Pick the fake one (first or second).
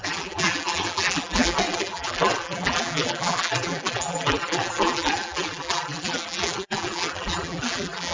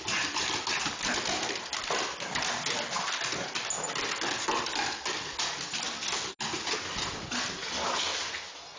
first